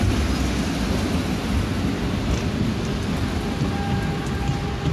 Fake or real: real